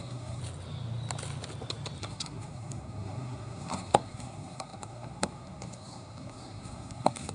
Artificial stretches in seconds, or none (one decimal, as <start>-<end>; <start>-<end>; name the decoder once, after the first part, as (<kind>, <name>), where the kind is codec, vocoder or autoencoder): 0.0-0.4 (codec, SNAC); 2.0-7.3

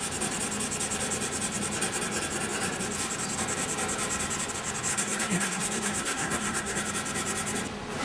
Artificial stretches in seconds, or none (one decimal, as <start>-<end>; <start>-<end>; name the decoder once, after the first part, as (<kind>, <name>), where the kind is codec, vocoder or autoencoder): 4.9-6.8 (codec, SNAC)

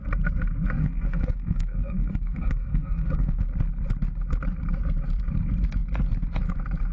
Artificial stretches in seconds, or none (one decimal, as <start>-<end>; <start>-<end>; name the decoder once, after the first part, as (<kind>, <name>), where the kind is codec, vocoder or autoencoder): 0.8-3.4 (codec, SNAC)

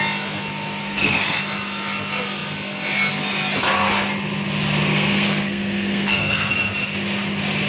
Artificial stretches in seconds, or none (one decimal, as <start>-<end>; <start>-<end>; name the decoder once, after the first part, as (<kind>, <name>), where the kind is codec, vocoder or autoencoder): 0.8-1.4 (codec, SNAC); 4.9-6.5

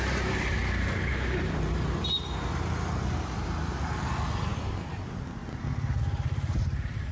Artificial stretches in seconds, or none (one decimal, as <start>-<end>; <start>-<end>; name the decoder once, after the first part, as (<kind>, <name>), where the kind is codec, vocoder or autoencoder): none